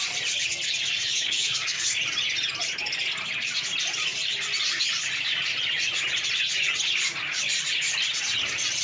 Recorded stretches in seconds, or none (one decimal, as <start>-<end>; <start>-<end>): 0.0-1.1; 2.0-8.8